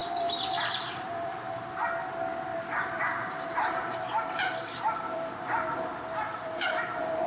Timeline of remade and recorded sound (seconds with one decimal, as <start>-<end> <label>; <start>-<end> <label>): 0.0-1.6 remade; 1.6-2.5 recorded; 2.5-7.3 remade